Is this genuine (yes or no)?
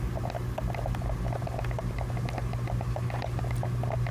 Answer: yes